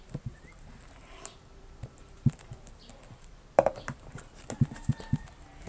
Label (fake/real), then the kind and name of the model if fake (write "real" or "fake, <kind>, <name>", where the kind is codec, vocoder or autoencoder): fake, vocoder, BigVGAN v2